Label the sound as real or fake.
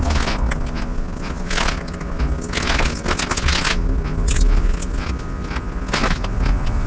real